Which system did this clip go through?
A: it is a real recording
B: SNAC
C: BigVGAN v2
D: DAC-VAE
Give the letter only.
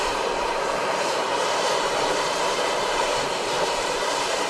C